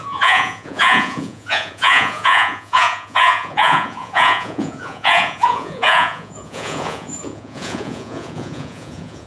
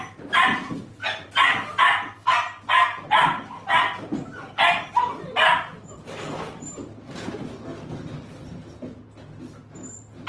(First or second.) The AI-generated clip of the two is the first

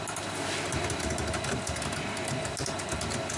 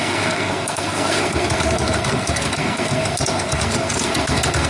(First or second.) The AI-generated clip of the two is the second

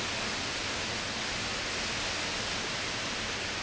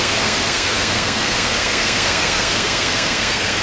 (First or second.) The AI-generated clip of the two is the second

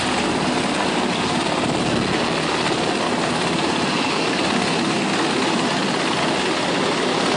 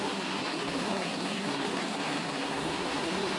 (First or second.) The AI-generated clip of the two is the second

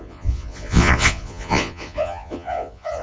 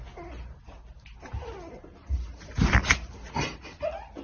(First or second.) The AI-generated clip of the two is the first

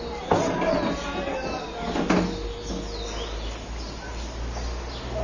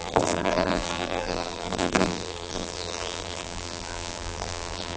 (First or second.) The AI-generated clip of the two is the second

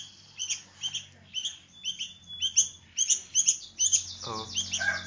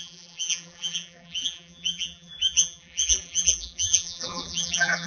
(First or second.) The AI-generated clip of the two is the second